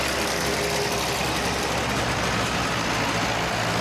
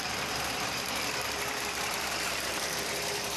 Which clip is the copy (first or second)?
second